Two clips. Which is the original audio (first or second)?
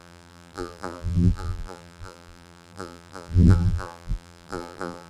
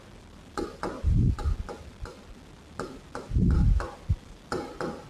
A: second